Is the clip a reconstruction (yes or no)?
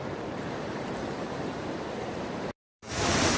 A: yes